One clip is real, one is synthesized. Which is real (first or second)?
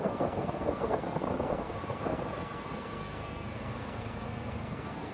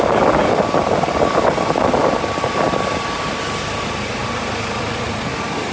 second